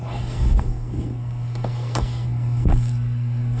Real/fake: fake